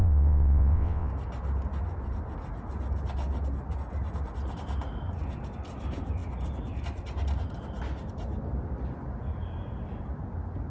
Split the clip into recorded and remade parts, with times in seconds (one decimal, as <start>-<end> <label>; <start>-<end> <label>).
0.0-1.1 remade; 1.1-10.7 recorded

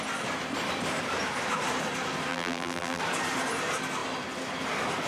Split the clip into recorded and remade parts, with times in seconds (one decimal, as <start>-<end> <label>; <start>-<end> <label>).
0.0-2.3 recorded; 2.3-3.0 remade; 3.0-5.1 recorded

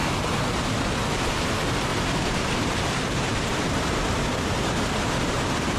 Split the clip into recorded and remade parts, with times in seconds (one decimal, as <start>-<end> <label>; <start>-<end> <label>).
0.0-0.7 remade; 0.7-1.9 recorded; 1.9-5.8 remade

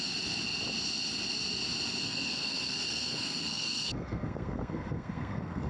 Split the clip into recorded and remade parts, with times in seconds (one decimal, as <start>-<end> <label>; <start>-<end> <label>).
0.0-2.0 recorded; 2.0-5.7 remade